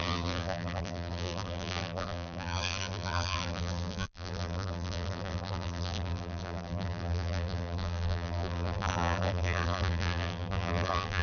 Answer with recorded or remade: remade